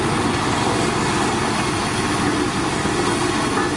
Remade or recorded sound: recorded